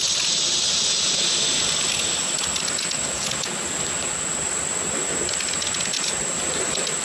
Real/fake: real